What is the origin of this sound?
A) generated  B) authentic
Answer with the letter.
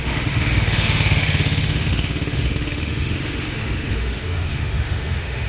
A